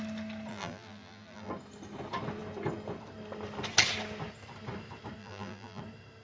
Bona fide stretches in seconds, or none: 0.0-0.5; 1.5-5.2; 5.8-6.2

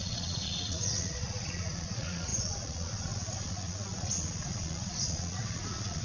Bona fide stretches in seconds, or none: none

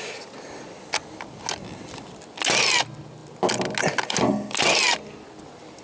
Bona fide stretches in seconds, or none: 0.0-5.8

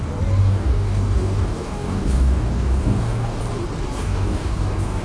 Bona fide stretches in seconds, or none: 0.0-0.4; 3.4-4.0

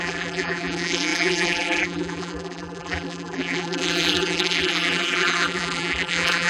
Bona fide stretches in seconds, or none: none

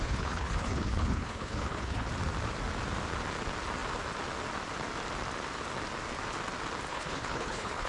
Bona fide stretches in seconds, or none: 2.1-6.9

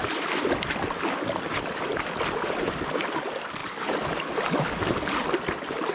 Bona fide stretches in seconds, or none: 0.0-5.9